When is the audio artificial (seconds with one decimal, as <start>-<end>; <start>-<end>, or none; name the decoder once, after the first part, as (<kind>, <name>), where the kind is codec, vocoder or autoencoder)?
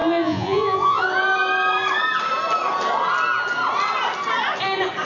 0.0-1.0 (vocoder, Vocos)